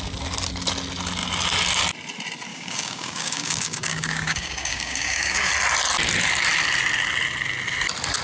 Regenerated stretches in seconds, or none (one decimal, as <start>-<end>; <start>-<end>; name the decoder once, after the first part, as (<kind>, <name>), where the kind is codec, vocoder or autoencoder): 2.5-5.5 (codec, DAC)